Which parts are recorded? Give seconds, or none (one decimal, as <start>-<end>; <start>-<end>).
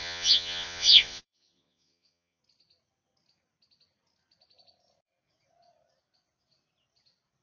2.4-7.4